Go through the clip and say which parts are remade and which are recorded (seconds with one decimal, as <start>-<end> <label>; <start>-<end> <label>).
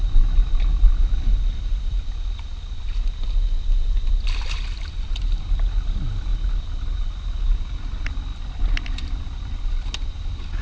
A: 0.0-0.7 recorded; 0.7-2.8 remade; 2.8-8.3 recorded; 8.3-9.9 remade; 9.9-10.6 recorded